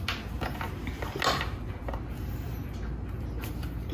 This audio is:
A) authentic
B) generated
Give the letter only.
A